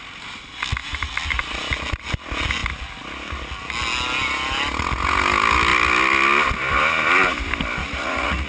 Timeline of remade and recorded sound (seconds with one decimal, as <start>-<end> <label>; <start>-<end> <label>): 0.0-7.8 recorded; 7.8-8.5 remade